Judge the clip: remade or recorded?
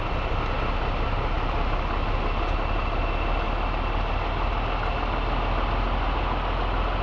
recorded